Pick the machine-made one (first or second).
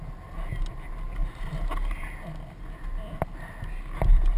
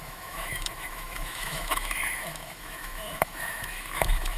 second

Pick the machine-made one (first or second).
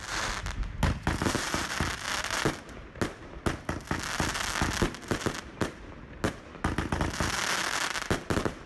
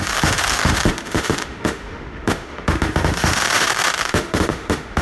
second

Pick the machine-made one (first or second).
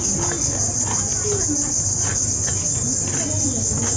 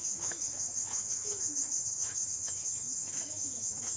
second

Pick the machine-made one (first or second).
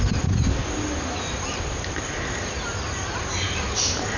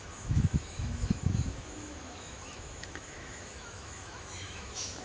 second